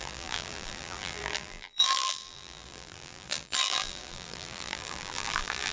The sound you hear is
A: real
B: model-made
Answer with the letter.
B